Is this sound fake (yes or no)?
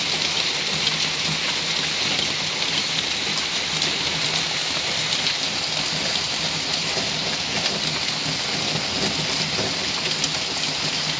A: no